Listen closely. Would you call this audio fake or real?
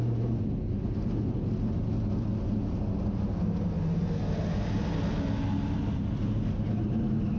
real